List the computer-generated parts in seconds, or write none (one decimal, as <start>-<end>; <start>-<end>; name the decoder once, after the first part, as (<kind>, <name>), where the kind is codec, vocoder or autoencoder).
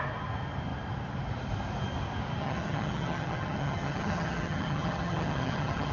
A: 2.4-5.9 (vocoder, HiFi-GAN)